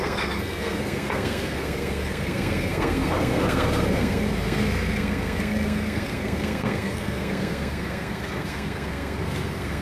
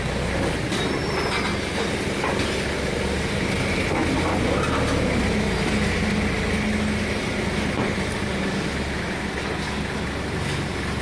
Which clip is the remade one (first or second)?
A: first